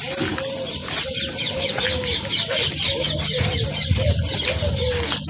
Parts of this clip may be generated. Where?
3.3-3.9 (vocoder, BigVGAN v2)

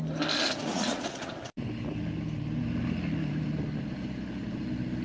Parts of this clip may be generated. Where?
0.6-1.3 (vocoder, Vocos)

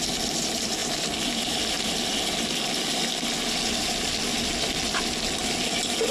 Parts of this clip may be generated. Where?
none